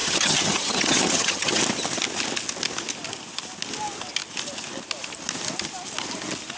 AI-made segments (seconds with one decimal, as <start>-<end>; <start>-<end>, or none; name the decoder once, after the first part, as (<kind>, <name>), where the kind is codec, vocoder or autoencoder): 0.0-1.6 (vocoder, HiFi-GAN)